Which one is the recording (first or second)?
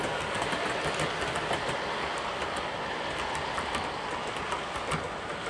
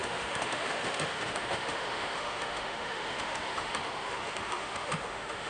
first